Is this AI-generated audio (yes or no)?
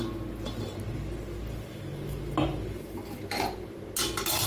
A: no